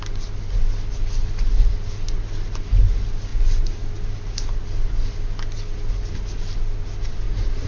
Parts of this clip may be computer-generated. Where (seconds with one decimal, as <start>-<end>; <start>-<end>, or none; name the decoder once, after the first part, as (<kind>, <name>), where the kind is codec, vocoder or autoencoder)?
none